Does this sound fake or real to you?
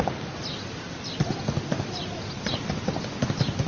real